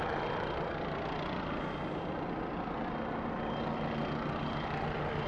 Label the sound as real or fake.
real